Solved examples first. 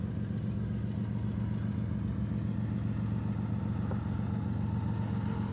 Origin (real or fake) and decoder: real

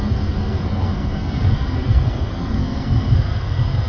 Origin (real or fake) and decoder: fake, codec, SNAC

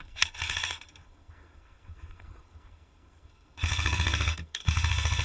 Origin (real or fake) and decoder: fake, codec, SNAC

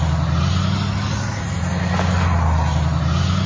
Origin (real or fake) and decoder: real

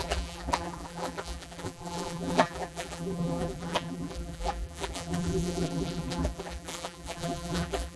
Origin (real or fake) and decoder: fake, vocoder, BigVGAN v2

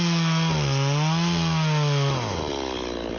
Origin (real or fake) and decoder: real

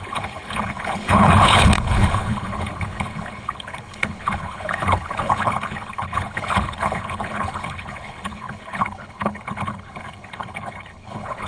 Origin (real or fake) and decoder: fake, codec, HILCodec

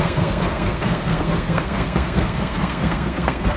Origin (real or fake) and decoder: fake, codec, SNAC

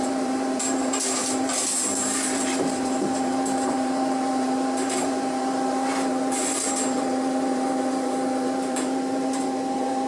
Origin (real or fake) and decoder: fake, vocoder, BigVGAN v2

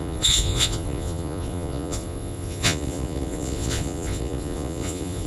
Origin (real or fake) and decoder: fake, vocoder, Vocos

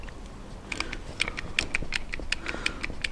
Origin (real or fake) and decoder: real